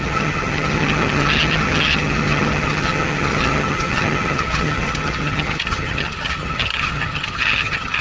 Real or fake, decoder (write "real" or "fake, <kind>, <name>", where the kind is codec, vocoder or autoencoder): fake, vocoder, HiFi-GAN